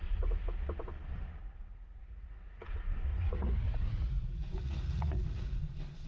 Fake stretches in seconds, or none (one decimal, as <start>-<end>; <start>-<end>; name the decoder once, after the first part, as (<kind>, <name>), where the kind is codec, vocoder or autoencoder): 1.4-2.6 (vocoder, Vocos); 3.1-5.6